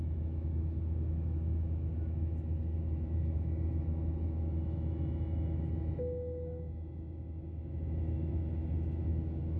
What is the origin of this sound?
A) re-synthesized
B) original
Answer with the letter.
A